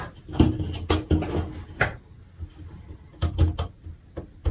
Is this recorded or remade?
recorded